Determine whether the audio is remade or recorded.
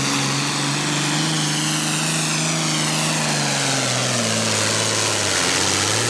recorded